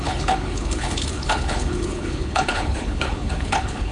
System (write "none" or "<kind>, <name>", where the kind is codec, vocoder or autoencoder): codec, HILCodec